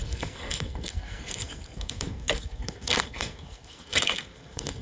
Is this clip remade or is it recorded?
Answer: remade